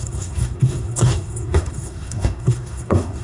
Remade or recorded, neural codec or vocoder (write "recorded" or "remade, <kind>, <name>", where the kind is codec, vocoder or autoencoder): remade, codec, SNAC